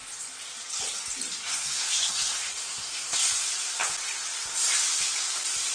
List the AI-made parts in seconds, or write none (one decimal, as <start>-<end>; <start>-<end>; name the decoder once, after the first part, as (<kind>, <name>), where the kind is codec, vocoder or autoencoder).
1.5-3.2 (codec, SNAC)